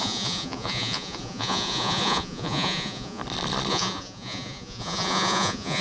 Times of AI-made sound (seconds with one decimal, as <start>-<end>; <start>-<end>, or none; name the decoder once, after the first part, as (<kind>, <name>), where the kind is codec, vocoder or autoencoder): 0.0-3.2 (vocoder, Vocos); 3.7-5.8